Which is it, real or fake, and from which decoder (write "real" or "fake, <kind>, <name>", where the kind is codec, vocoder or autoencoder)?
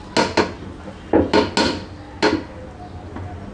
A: real